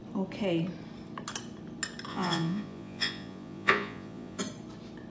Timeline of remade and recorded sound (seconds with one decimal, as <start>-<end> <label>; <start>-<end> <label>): 0.0-2.1 recorded; 2.1-4.4 remade; 4.4-5.1 recorded

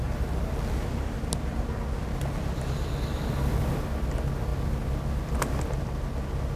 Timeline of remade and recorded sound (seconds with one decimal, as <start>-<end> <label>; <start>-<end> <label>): 0.0-6.6 recorded